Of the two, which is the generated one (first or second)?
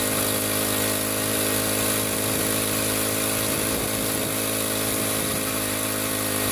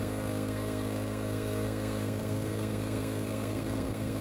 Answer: second